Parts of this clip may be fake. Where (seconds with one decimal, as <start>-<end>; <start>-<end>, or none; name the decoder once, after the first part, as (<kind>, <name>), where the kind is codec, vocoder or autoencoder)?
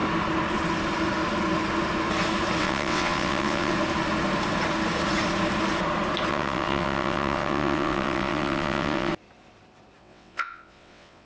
2.6-3.7 (vocoder, WaveNeXt); 6.3-9.1; 10.0-11.2